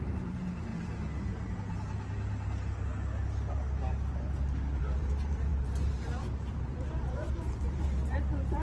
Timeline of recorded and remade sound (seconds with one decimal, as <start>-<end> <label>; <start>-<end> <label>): 0.0-0.7 remade; 0.7-4.8 recorded; 4.8-8.6 remade